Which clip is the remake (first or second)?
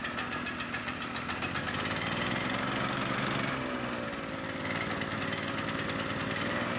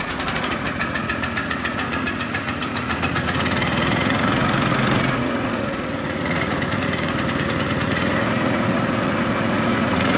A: second